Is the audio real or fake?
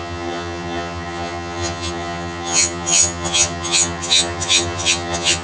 fake